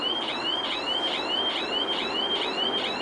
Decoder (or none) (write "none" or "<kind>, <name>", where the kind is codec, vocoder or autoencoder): none